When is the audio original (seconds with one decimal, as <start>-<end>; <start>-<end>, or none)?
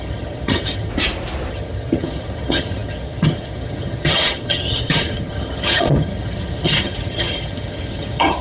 0.9-1.5